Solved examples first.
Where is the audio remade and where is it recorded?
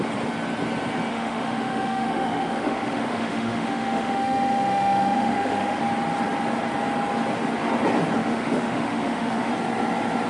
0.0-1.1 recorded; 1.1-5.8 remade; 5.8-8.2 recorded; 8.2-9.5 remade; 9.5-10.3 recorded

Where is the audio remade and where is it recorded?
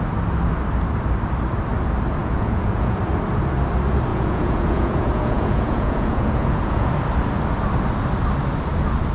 0.0-2.2 recorded; 2.2-3.0 remade; 3.0-4.1 recorded; 4.1-6.9 remade; 6.9-9.1 recorded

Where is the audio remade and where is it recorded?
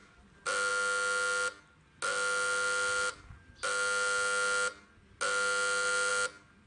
0.0-6.7 recorded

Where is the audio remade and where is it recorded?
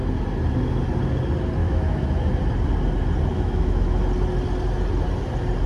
0.0-1.6 recorded; 1.6-2.1 remade; 2.1-3.3 recorded; 3.3-4.0 remade; 4.0-5.7 recorded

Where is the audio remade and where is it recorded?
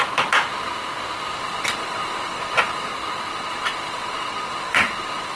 0.0-1.3 recorded; 1.3-2.9 remade; 2.9-3.3 recorded; 3.3-5.4 remade